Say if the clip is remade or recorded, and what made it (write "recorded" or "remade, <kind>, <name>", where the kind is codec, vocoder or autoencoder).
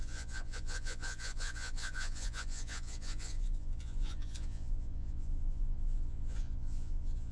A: remade, vocoder, Vocos